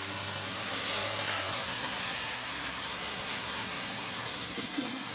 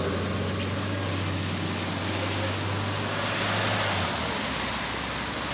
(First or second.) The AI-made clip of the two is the first